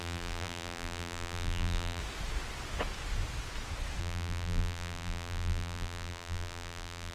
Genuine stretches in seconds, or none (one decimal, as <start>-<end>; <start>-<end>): 2.0-4.0